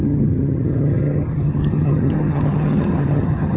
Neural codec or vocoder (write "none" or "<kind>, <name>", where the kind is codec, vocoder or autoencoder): vocoder, HiFi-GAN